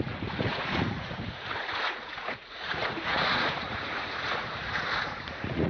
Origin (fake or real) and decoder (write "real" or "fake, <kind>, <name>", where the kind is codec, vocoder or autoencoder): fake, vocoder, Vocos